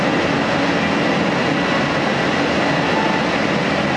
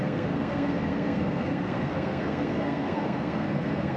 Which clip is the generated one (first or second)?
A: second